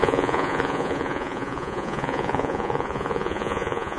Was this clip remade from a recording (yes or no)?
yes